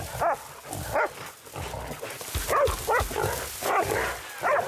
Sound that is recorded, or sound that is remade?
recorded